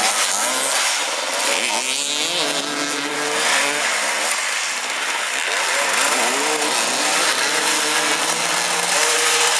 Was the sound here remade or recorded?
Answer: recorded